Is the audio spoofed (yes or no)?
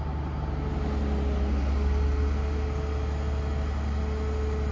no